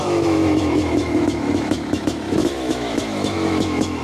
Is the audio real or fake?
fake